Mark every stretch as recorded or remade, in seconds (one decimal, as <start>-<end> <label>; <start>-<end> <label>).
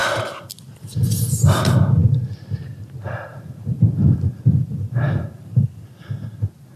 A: 0.0-0.8 remade; 0.8-3.3 recorded; 3.3-6.3 remade; 6.3-6.8 recorded